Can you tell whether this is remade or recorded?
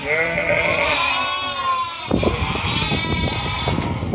recorded